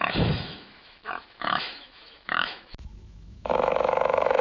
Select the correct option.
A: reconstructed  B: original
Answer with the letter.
A